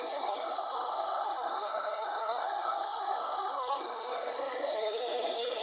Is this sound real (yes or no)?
no